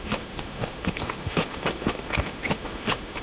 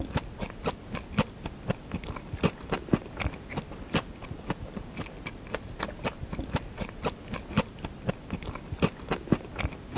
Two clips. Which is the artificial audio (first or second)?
first